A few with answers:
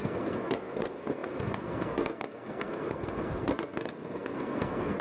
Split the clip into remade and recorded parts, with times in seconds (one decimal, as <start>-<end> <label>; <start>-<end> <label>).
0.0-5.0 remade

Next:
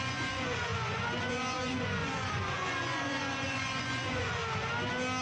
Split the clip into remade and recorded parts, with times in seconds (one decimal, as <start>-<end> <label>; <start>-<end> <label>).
0.0-4.4 remade; 4.4-5.2 recorded

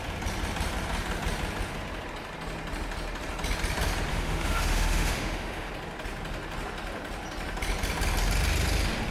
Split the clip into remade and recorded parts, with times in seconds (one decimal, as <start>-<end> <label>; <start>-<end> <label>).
0.0-4.1 recorded; 4.1-5.7 remade; 5.7-9.1 recorded